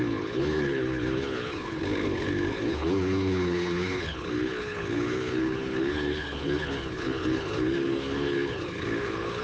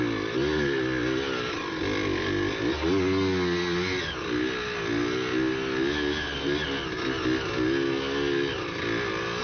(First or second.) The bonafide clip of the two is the second